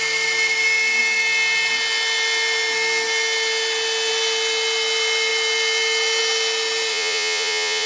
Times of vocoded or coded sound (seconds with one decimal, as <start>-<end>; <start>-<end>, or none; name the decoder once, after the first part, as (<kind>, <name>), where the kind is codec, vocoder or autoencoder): 6.9-7.9 (vocoder, Vocos)